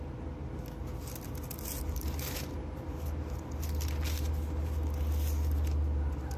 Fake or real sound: real